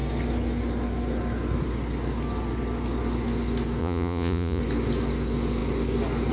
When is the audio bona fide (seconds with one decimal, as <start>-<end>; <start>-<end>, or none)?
0.0-3.8; 4.6-6.3